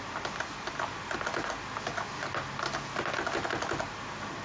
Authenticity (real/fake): real